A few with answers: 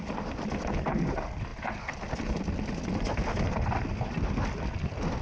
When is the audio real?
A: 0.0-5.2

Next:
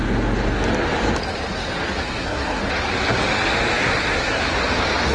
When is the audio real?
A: 0.0-2.0; 2.6-3.8; 4.4-5.1

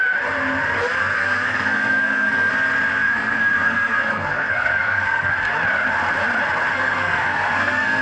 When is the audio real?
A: 0.0-1.0; 2.5-2.9; 5.3-6.7